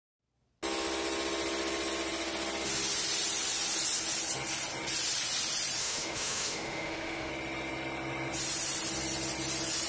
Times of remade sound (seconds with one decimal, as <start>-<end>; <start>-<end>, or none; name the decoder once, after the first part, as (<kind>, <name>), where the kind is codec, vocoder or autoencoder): 5.8-7.3 (autoencoder, DAC-VAE)